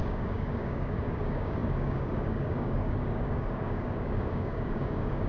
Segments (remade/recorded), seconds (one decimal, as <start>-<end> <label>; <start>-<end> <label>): 0.0-5.3 remade